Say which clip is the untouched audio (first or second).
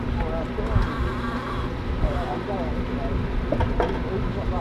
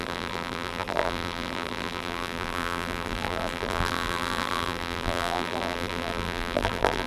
first